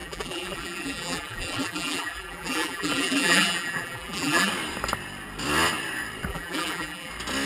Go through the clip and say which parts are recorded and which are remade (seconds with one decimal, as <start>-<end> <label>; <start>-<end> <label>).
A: 0.0-4.5 remade; 4.5-6.3 recorded; 6.3-7.1 remade; 7.1-7.5 recorded